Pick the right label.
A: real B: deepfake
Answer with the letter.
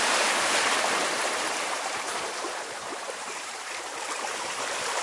B